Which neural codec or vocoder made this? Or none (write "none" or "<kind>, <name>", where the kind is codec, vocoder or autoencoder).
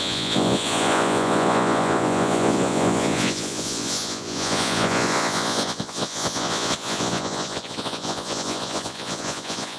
vocoder, Vocos